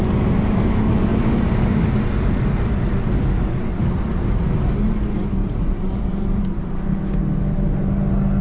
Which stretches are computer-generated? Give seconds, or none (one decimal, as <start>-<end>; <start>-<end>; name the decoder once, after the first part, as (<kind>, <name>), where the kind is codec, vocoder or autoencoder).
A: 1.1-1.9 (vocoder, BigVGAN v2); 5.4-7.0